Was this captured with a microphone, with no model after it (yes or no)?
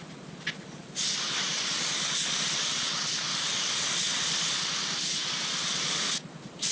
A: yes